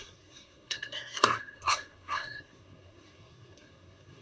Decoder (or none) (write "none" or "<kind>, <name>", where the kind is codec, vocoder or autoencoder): codec, SNAC